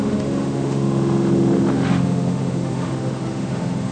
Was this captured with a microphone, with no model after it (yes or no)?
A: no